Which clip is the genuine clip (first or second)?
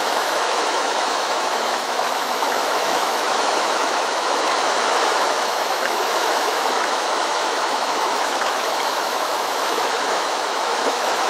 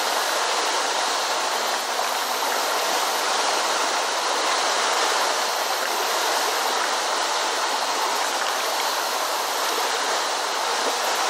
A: second